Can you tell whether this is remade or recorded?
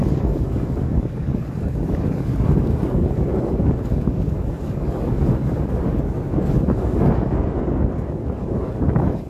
remade